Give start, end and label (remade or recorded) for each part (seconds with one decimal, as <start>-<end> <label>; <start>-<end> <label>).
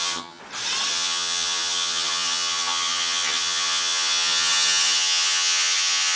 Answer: 0.0-0.4 remade; 0.4-0.9 recorded; 0.9-6.2 remade